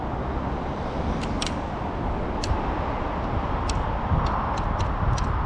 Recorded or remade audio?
recorded